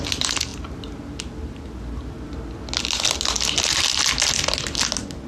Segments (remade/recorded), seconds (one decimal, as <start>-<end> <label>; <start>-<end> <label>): 0.0-5.3 recorded